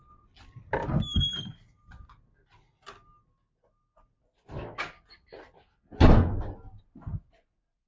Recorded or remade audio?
recorded